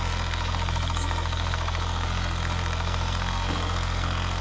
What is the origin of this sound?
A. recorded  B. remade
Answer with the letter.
B